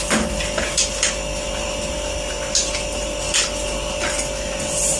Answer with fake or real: real